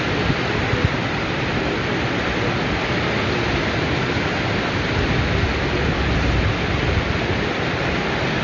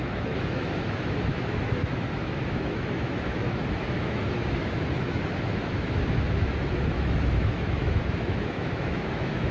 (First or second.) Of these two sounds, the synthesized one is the second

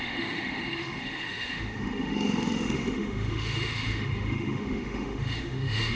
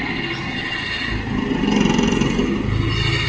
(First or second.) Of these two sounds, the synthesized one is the first